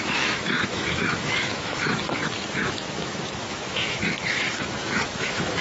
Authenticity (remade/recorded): remade